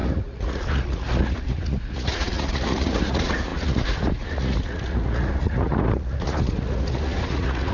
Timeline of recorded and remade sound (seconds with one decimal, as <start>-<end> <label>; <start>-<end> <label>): 0.0-7.7 remade